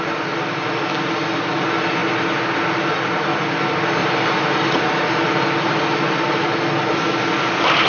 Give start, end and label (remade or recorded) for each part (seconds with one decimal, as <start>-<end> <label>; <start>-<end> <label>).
0.0-4.0 recorded; 4.0-4.9 remade; 4.9-7.9 recorded